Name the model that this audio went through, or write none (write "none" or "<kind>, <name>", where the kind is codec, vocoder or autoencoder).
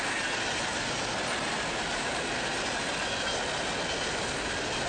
none